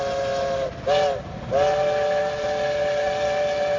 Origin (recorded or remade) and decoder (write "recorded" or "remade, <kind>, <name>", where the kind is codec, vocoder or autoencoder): recorded